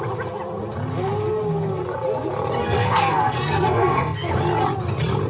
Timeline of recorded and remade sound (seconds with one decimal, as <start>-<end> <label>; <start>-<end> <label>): 0.0-2.6 recorded; 2.6-4.3 remade; 4.3-5.3 recorded